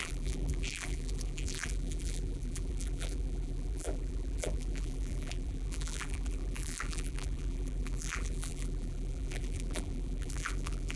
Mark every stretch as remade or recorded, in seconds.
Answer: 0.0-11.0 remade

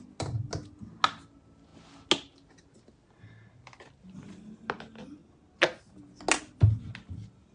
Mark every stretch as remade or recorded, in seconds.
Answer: 0.0-7.5 recorded

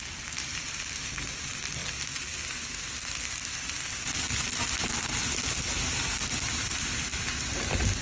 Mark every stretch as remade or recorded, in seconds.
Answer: 0.0-1.8 remade; 1.8-5.7 recorded; 5.7-7.1 remade; 7.1-8.0 recorded

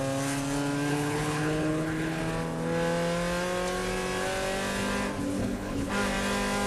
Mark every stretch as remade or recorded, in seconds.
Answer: 0.0-0.9 recorded; 0.9-2.2 remade; 2.2-5.4 recorded; 5.4-5.9 remade; 5.9-6.7 recorded